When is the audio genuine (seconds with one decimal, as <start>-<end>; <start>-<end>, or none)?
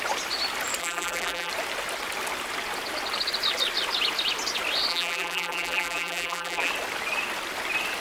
0.0-0.8; 1.5-4.9; 6.7-8.0